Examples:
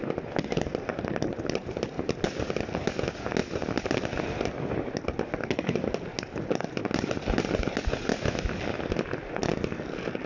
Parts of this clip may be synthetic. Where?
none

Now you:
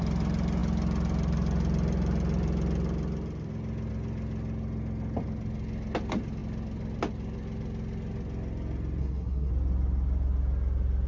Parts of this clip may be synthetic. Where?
9.0-9.5 (codec, SNAC)

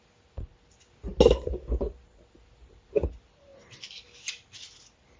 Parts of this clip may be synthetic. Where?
none

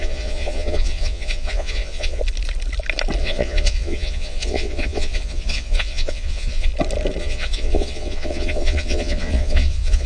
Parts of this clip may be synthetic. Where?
0.0-2.2 (vocoder, Vocos); 3.2-6.7; 7.2-10.1

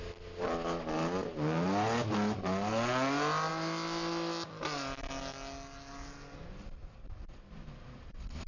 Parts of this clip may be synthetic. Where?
none

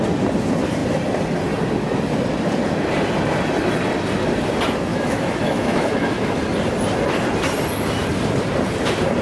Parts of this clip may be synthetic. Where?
4.9-6.4 (autoencoder, DAC-VAE)

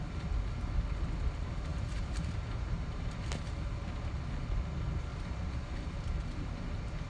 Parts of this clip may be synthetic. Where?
1.7-3.3 (vocoder, BigVGAN v2); 5.1-5.6